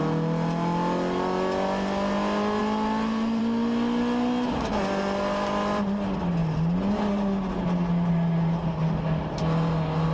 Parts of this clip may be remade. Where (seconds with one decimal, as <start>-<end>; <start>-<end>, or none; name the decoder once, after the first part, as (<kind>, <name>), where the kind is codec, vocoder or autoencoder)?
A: none